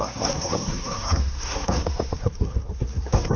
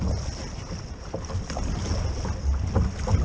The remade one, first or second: first